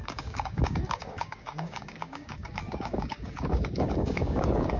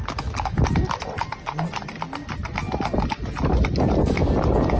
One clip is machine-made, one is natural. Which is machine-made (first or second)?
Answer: first